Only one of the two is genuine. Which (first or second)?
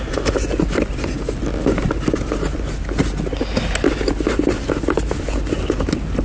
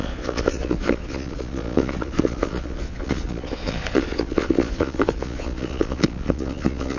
first